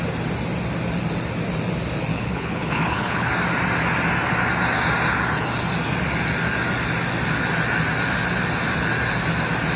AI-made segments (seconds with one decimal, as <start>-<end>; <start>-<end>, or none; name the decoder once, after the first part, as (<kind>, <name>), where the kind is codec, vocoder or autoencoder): 2.1-3.3 (codec, HILCodec)